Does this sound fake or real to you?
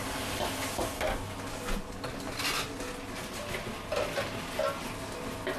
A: real